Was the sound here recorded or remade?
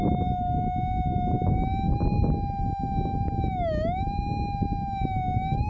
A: recorded